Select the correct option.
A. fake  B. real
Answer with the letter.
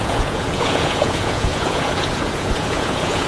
A